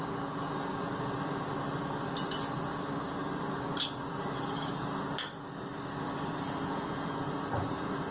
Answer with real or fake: real